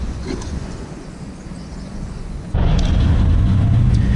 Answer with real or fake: fake